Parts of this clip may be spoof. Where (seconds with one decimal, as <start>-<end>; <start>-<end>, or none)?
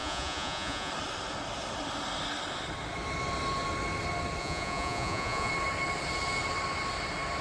0.0-0.9; 4.4-5.5